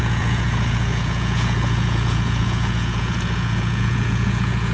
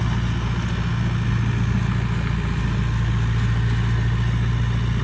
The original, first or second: second